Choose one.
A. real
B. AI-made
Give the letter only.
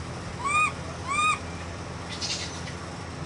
A